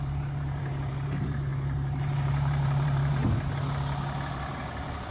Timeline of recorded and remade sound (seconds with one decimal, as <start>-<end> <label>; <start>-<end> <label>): 0.0-3.2 remade; 3.2-4.3 recorded; 4.3-5.1 remade